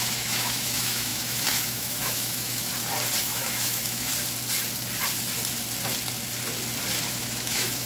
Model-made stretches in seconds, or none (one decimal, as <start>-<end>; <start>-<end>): 0.0-2.7; 3.2-4.1; 7.1-7.9